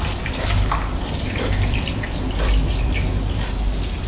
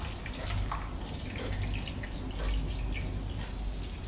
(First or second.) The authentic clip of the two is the second